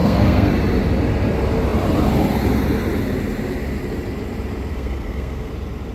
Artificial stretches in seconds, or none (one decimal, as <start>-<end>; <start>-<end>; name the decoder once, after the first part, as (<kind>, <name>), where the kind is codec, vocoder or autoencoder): 0.0-0.5 (codec, SNAC); 4.7-5.5